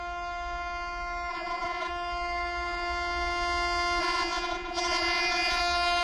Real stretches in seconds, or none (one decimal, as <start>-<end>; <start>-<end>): 0.0-1.3; 1.9-4.0; 5.6-6.0